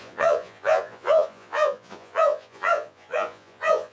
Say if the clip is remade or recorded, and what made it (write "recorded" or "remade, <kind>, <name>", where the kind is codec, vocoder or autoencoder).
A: remade, vocoder, Vocos